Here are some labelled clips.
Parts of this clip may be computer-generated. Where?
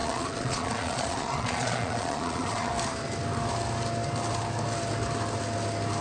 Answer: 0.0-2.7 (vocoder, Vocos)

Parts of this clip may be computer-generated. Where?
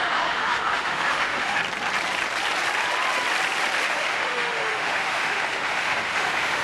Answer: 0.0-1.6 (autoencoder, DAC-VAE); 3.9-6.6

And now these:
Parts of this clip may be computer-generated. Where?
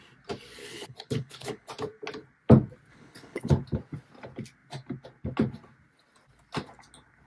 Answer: 0.6-1.7 (codec, HILCodec); 2.9-3.5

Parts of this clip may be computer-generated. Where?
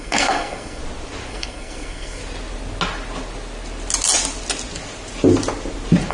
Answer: 0.0-0.8 (codec, SNAC); 1.3-2.2